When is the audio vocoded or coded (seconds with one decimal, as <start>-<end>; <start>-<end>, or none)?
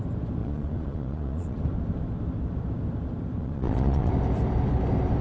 0.4-1.6; 3.4-4.1